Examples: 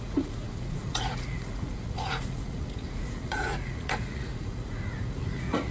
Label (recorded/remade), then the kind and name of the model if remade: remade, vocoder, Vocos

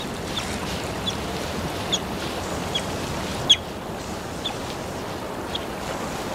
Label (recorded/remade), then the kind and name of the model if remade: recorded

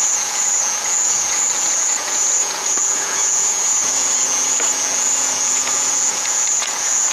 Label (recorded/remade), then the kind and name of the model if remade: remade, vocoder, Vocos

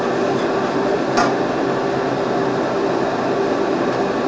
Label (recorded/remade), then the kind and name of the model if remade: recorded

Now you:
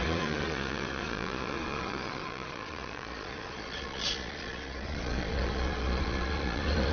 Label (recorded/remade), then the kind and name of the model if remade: remade, vocoder, Vocos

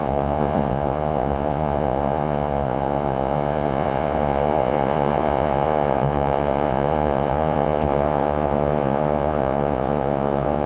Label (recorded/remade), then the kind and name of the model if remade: remade, vocoder, Vocos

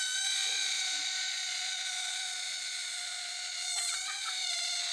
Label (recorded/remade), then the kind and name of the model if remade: remade, vocoder, Vocos